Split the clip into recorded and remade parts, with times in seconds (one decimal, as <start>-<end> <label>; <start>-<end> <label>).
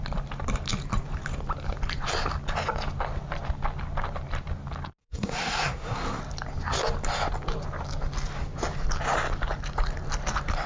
0.0-5.0 recorded; 5.0-6.2 remade; 6.2-10.7 recorded